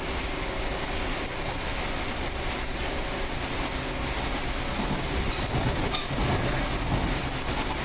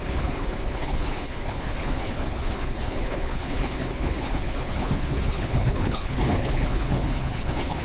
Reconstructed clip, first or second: second